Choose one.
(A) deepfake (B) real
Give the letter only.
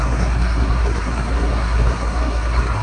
A